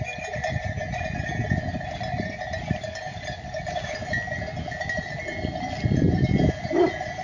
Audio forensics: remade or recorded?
recorded